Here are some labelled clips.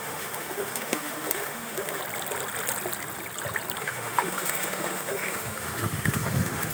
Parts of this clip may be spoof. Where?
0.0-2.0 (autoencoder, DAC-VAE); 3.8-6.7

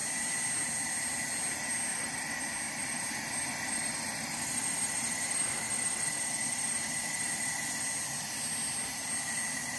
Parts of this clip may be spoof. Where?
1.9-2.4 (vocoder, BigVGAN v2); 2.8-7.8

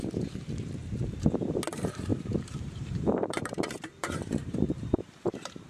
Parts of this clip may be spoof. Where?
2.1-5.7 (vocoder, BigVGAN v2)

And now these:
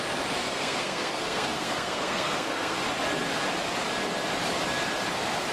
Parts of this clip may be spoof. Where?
0.4-2.8 (codec, SNAC)

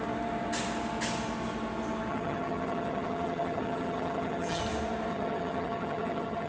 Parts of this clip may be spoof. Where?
2.1-4.6 (vocoder, HiFi-GAN); 5.1-6.5